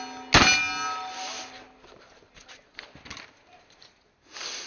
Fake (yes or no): no